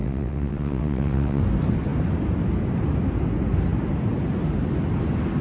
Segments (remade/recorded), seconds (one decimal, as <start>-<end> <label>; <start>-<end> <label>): 0.0-1.4 remade; 1.4-5.4 recorded